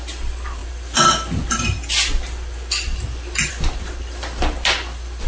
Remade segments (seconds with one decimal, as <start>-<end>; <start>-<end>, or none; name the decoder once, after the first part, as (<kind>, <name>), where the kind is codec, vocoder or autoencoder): none